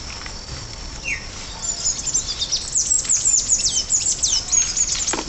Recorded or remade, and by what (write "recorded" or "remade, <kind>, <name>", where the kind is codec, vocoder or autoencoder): recorded